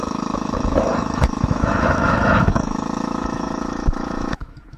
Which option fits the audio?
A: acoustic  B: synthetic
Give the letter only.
B